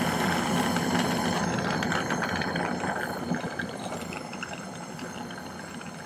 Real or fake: real